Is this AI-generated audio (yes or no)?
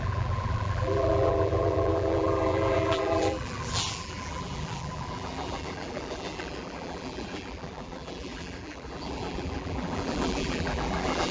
yes